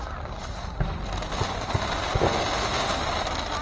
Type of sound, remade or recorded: recorded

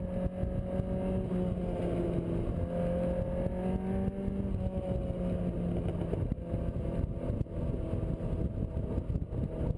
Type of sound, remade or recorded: recorded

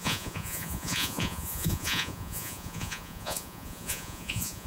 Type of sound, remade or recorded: remade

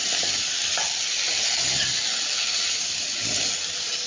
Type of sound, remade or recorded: recorded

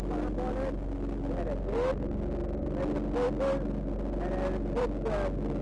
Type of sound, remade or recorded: recorded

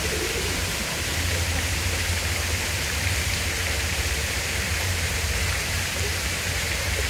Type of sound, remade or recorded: remade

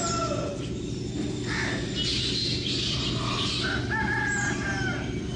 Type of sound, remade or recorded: recorded